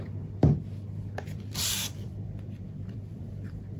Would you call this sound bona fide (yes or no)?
no